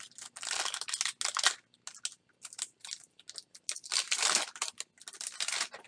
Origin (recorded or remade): recorded